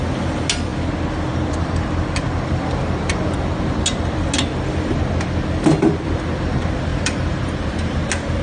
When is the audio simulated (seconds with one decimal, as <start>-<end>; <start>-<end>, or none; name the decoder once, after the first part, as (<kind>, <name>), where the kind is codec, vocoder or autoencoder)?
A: 6.9-8.0 (vocoder, BigVGAN v2)